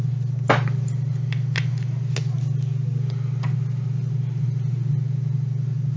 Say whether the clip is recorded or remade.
recorded